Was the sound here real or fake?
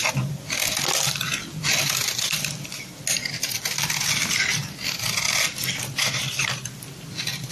real